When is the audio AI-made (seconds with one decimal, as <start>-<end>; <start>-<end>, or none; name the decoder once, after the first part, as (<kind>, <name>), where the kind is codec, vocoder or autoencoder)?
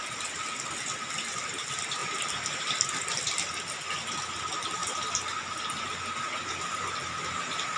0.0-2.0 (vocoder, BigVGAN v2); 2.8-4.8; 6.7-7.8